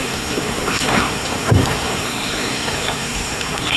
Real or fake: fake